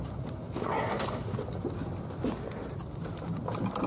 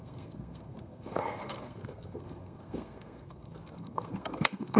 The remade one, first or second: second